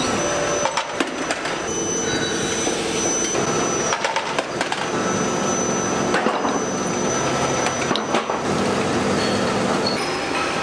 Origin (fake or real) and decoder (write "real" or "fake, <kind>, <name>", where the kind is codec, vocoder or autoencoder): real